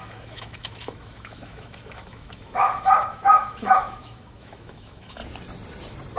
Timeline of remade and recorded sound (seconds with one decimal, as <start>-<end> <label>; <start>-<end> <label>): 0.0-5.2 remade; 5.2-6.2 recorded